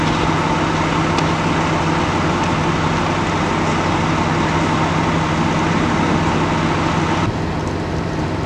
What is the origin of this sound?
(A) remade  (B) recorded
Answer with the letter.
B